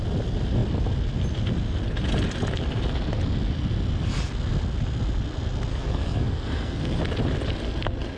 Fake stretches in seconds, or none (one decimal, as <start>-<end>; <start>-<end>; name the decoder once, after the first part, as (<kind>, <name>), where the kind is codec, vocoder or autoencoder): 5.7-7.0 (codec, SNAC)